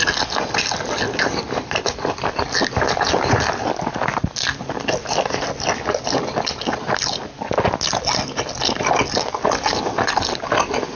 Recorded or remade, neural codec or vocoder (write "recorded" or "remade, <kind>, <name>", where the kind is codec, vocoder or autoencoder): recorded